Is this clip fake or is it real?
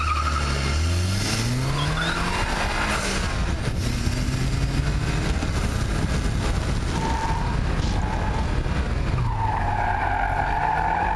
real